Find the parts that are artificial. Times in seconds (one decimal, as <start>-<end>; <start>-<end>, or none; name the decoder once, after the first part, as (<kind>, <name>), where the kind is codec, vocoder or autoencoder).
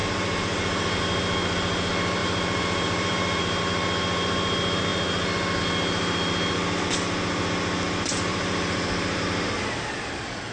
0.0-1.0 (vocoder, BigVGAN v2); 2.2-3.6; 8.3-9.2